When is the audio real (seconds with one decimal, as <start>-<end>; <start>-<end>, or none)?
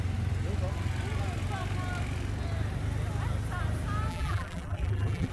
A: 0.0-4.1